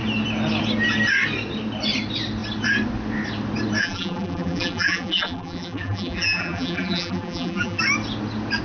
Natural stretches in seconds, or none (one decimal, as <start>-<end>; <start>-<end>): 0.0-3.8; 7.8-8.6